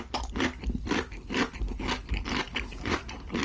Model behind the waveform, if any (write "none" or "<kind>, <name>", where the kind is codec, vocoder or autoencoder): none